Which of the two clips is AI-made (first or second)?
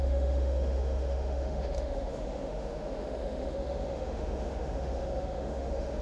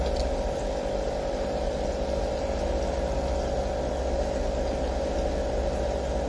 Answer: first